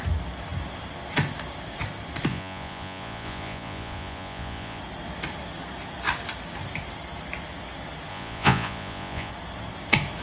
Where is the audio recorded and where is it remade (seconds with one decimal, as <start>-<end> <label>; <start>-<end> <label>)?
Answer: 0.0-2.3 recorded; 2.3-4.8 remade; 4.8-8.1 recorded; 8.1-9.3 remade; 9.3-10.2 recorded